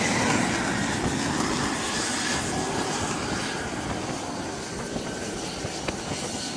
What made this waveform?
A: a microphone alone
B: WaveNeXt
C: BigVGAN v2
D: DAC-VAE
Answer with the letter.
A